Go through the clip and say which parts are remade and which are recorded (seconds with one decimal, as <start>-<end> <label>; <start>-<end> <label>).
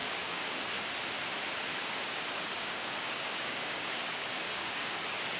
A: 0.0-0.6 remade; 0.6-1.8 recorded; 1.8-5.0 remade; 5.0-5.4 recorded